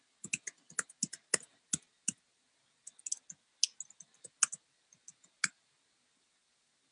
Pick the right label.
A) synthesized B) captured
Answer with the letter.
B